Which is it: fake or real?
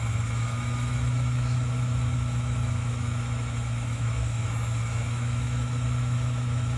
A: fake